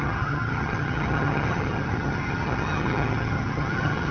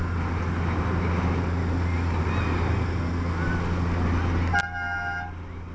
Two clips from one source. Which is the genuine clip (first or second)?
second